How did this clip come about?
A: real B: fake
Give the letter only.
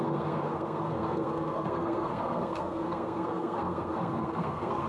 B